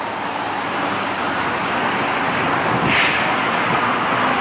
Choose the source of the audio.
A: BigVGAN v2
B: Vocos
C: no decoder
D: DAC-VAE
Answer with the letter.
C